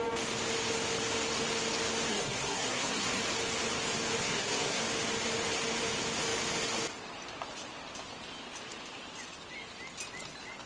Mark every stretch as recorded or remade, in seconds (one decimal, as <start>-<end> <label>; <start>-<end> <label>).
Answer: 0.0-2.1 recorded; 2.1-3.2 remade; 3.2-4.2 recorded; 4.2-4.8 remade; 4.8-10.7 recorded